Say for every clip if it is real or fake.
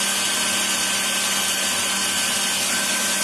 real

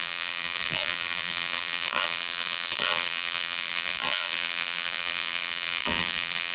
fake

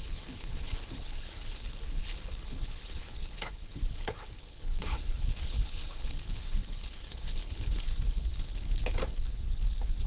fake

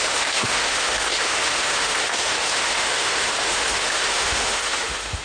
fake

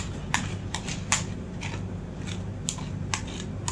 real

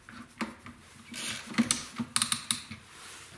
real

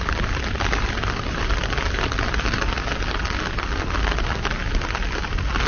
real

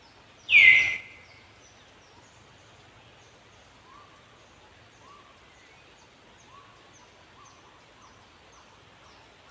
real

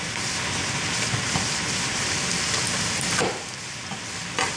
real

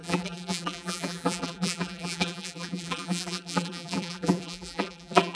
fake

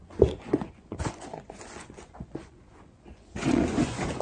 fake